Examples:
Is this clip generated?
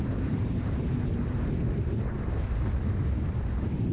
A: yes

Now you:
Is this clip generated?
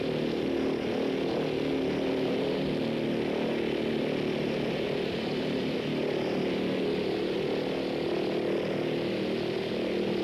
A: no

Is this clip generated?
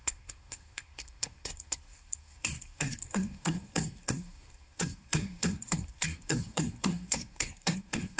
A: yes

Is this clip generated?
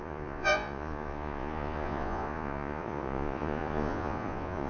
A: yes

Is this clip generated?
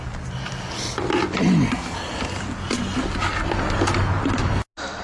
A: no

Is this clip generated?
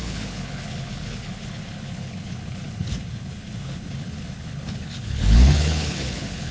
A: yes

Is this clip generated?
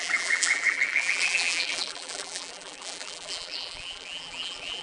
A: yes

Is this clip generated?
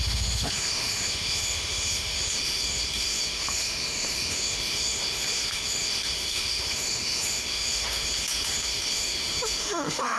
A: yes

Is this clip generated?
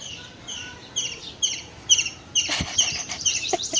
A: yes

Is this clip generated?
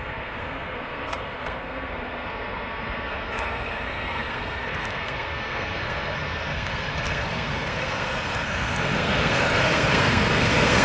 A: yes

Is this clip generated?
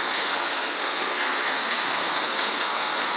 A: yes